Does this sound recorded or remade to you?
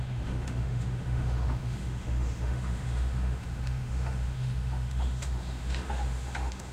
remade